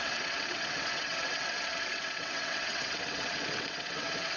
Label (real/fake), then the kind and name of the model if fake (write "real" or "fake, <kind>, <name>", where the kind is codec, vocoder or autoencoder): fake, vocoder, WaveNeXt